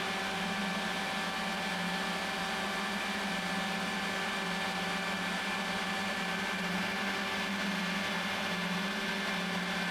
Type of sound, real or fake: real